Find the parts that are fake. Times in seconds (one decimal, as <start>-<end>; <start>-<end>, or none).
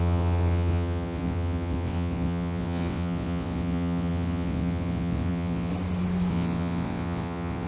0.0-5.7; 6.3-7.7